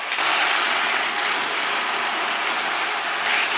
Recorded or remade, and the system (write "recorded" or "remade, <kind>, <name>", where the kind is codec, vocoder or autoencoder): recorded